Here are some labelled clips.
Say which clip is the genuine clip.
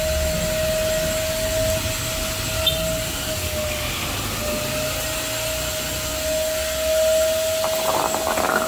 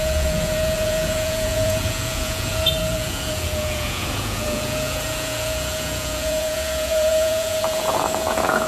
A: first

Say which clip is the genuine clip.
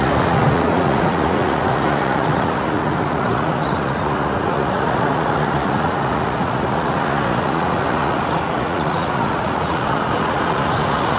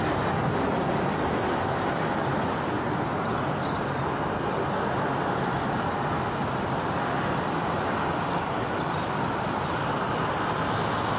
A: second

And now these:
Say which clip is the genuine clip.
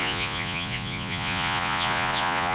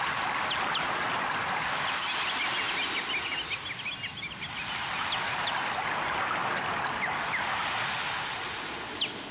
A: second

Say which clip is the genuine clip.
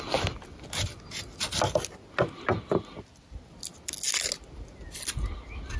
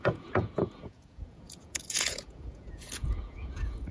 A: first